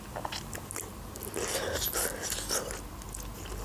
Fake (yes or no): no